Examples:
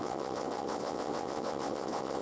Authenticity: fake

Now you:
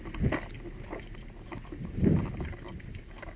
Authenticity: fake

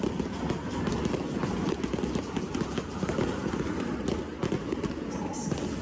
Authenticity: real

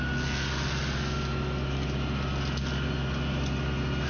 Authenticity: real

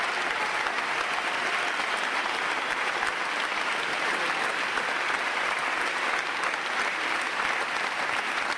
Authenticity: real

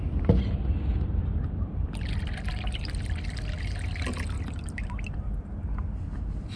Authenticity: real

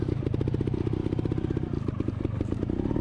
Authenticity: real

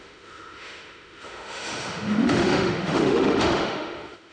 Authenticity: fake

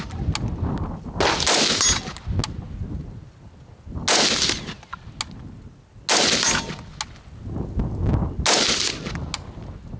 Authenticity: real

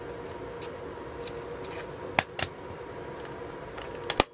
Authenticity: real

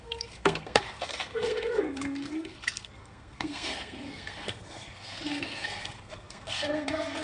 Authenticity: fake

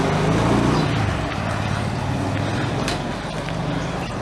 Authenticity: real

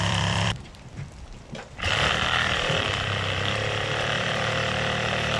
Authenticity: fake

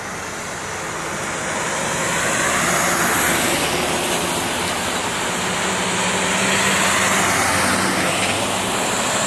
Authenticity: real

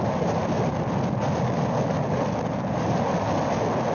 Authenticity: real